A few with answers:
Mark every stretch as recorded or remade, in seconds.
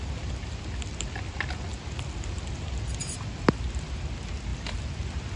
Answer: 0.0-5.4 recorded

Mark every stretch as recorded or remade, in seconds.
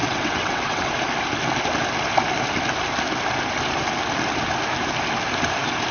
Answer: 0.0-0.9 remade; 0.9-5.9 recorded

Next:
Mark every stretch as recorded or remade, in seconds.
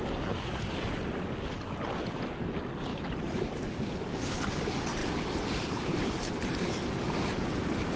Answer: 0.0-2.9 recorded; 2.9-3.8 remade; 3.8-5.0 recorded; 5.0-7.3 remade; 7.3-8.0 recorded